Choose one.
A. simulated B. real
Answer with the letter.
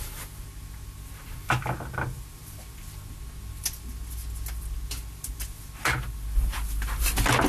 B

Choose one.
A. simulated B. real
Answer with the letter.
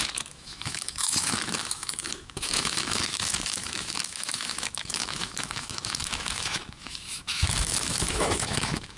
A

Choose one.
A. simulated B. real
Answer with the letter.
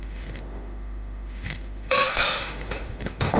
A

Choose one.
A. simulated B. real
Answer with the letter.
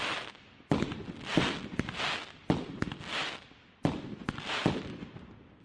B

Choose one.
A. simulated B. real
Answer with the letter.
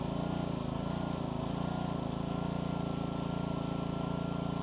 B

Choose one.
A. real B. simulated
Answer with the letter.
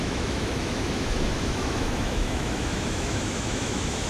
B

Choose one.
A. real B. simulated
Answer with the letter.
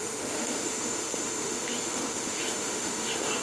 B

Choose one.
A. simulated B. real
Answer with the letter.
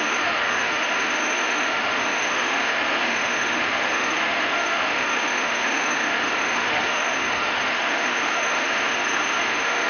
A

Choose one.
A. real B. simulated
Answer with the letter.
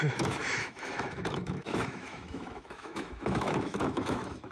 B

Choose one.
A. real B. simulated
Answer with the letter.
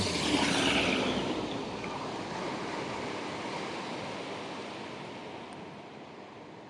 A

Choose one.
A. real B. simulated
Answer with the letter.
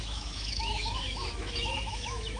B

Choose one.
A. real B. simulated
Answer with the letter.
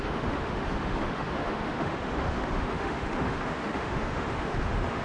B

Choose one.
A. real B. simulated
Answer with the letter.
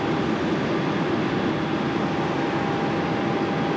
A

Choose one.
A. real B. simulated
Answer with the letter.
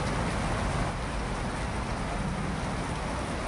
A